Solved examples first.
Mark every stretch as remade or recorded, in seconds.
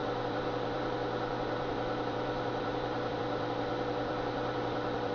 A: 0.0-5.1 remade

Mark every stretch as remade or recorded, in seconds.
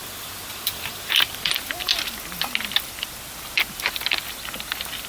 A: 0.0-1.9 remade; 1.9-5.1 recorded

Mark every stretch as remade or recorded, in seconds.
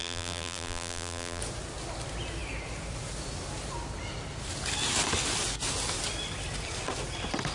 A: 0.0-1.4 remade; 1.4-7.5 recorded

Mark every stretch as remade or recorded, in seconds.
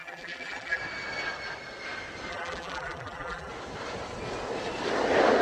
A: 0.0-0.8 remade; 0.8-2.3 recorded; 2.3-3.5 remade; 3.5-5.4 recorded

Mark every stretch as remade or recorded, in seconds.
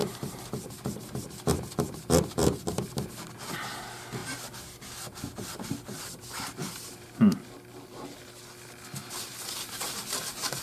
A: 0.0-3.3 remade; 3.3-4.2 recorded; 4.2-7.1 remade; 7.1-9.0 recorded; 9.0-10.0 remade; 10.0-10.6 recorded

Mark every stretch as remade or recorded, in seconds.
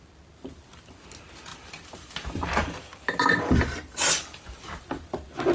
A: 0.0-1.5 recorded; 1.5-4.8 remade; 4.8-5.5 recorded